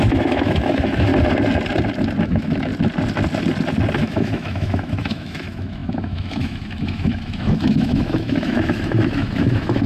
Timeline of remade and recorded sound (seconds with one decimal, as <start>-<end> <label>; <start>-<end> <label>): 0.0-1.1 remade; 1.1-2.2 recorded; 2.2-2.7 remade; 2.7-4.0 recorded; 4.0-9.9 remade